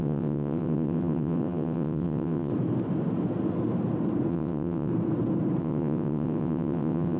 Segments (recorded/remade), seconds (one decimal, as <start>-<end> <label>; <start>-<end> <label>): 0.0-2.5 remade; 2.5-4.3 recorded; 4.3-4.9 remade; 4.9-5.6 recorded; 5.6-7.2 remade